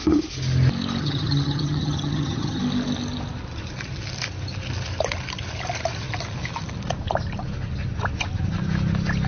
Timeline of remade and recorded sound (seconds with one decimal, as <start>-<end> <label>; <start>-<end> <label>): 0.0-1.0 recorded; 1.0-2.6 remade; 2.6-9.3 recorded

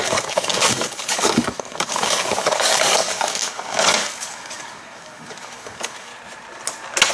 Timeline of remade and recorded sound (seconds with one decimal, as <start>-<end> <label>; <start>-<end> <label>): 0.0-6.1 remade; 6.1-7.1 recorded

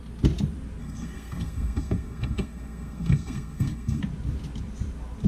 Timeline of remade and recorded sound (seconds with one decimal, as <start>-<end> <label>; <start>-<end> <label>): 0.0-0.8 recorded; 0.8-4.0 remade; 4.0-5.3 recorded

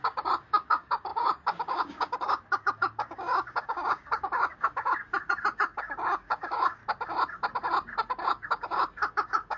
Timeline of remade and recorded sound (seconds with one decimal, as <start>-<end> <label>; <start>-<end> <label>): 0.0-6.8 remade; 6.8-8.2 recorded; 8.2-9.6 remade

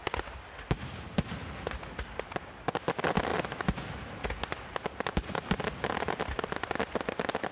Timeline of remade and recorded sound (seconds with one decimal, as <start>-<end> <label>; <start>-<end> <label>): 0.0-7.5 recorded

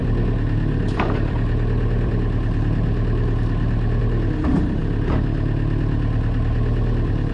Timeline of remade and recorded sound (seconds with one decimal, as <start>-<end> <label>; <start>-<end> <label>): 0.0-4.8 remade; 4.8-5.8 recorded; 5.8-7.3 remade

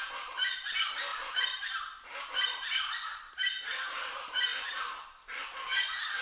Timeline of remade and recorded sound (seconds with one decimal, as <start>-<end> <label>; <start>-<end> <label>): 0.0-1.1 recorded; 1.1-1.7 remade; 1.7-6.2 recorded